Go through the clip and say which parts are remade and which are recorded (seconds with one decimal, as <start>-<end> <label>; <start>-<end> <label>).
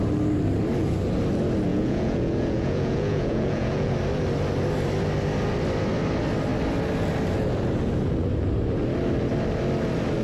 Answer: 0.0-1.7 recorded; 1.7-3.9 remade; 3.9-10.2 recorded